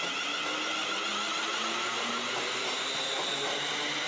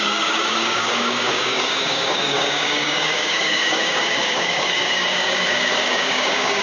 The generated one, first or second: second